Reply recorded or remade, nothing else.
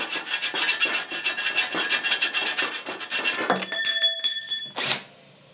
recorded